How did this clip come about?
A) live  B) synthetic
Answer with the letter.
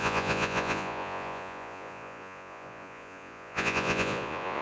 B